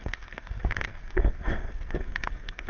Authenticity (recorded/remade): remade